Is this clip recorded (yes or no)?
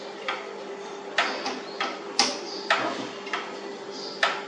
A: yes